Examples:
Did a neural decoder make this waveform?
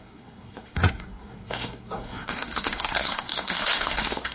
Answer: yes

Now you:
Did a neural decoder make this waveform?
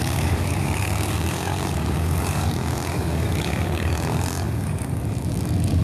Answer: yes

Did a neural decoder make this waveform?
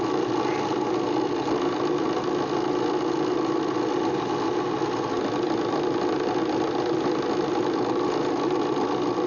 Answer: no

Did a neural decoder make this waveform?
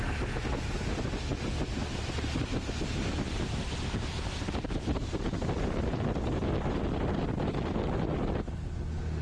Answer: no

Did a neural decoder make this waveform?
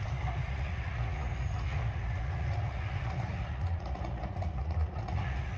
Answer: yes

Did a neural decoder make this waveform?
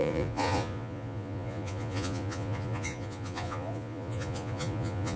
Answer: yes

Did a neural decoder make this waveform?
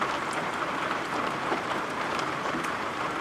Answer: yes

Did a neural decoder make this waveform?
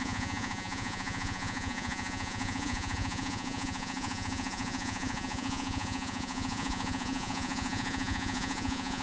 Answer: yes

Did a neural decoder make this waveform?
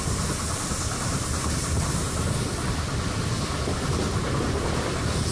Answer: no